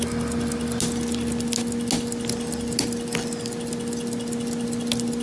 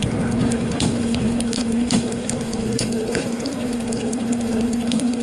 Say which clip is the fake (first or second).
second